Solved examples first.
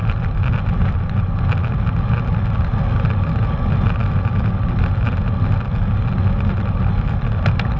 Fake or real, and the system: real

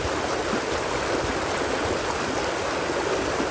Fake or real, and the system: real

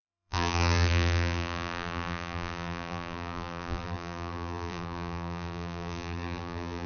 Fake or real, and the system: fake, vocoder, BigVGAN v2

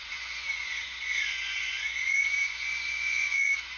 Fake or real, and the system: fake, vocoder, Vocos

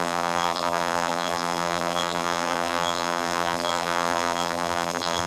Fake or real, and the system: fake, vocoder, BigVGAN v2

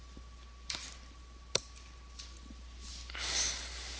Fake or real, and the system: real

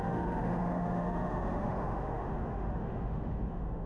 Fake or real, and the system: fake, autoencoder, DAC-VAE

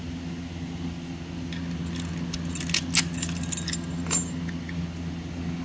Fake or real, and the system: real